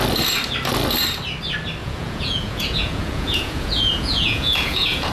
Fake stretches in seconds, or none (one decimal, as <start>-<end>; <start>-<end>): 1.8-5.1